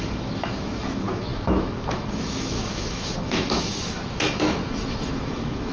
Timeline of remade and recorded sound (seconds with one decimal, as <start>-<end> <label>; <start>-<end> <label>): 0.0-5.7 remade